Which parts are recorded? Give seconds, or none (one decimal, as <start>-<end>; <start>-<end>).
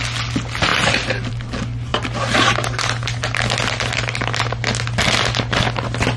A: 0.0-0.7; 1.3-1.9; 4.4-6.2